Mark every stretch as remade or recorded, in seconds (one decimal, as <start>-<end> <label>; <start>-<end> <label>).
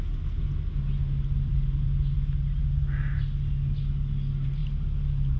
0.0-5.4 recorded